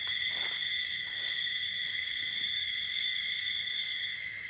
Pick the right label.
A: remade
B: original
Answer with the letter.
A